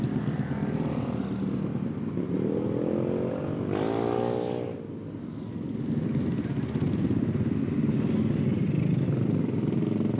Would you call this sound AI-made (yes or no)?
no